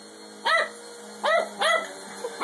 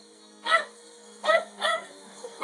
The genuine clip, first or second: first